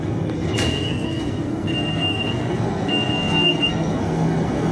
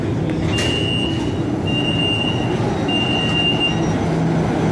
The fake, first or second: first